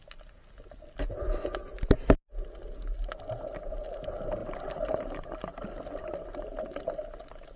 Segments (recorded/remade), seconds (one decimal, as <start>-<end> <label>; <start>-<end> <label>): 0.0-7.6 recorded

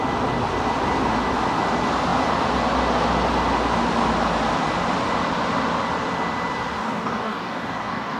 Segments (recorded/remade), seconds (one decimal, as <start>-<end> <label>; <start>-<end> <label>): 0.0-6.8 recorded; 6.8-8.2 remade